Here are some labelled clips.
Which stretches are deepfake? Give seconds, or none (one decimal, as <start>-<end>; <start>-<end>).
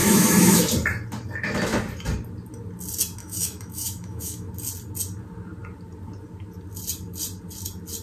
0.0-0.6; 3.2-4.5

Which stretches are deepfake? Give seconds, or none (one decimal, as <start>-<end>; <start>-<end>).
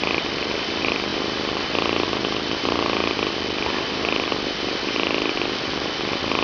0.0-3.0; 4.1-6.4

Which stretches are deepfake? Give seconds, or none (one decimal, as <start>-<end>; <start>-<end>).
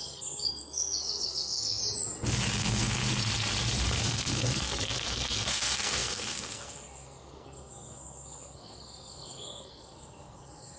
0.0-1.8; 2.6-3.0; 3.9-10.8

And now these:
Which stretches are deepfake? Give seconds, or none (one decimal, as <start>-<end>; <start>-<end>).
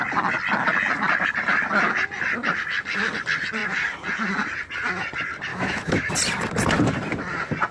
5.5-6.1